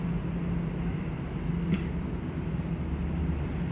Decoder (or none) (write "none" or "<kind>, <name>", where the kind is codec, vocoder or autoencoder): none